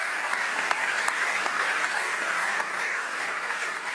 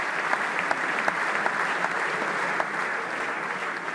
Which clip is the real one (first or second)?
second